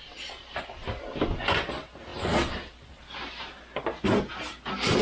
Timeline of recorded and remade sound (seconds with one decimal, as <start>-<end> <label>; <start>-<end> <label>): 0.0-5.0 recorded